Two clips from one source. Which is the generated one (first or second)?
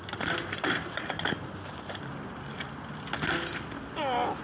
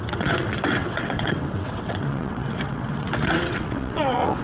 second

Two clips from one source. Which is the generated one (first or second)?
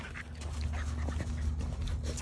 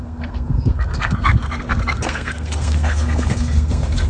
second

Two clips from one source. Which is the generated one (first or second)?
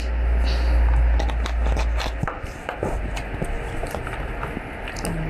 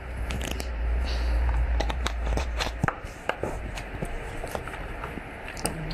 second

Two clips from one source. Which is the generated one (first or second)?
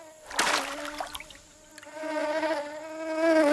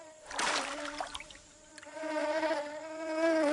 second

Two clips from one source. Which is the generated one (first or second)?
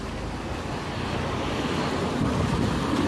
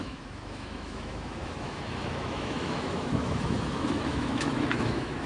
second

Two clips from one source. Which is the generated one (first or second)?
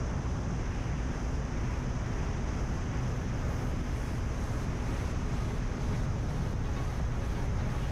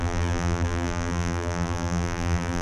second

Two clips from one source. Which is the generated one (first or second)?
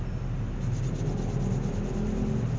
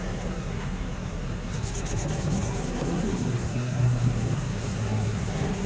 second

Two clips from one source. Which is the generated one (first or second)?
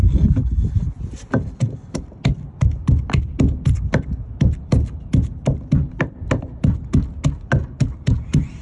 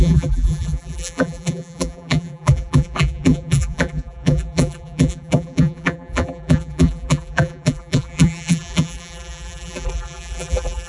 second